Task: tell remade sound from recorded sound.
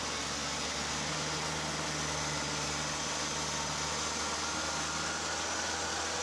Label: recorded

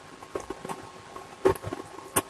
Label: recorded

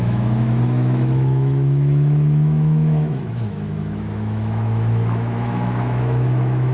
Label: remade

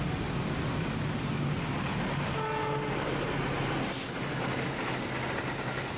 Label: recorded